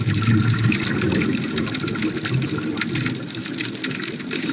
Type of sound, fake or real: real